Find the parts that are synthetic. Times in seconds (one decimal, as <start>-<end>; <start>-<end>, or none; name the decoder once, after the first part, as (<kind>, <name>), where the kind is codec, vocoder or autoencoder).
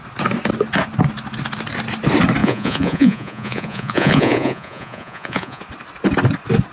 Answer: 2.4-5.6 (vocoder, Vocos)